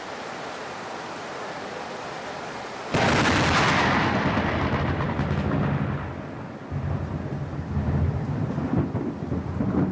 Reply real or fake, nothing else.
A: real